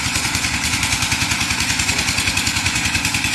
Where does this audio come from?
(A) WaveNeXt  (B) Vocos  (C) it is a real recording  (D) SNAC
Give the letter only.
B